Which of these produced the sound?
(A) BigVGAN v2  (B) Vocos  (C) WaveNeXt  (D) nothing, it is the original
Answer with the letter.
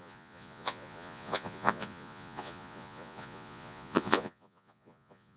B